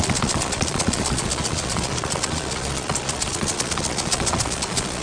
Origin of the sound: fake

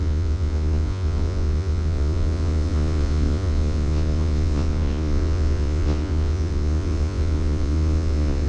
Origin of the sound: fake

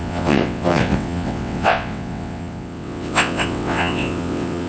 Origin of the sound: fake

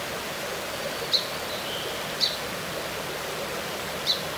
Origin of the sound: fake